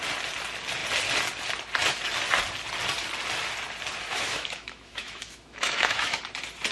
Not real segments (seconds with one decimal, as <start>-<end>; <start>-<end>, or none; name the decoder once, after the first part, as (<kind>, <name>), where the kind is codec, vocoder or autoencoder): 4.1-6.2 (autoencoder, DAC-VAE)